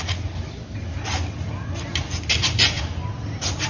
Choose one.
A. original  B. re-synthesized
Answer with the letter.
A